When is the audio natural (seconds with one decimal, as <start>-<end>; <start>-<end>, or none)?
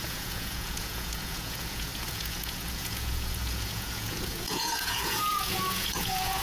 none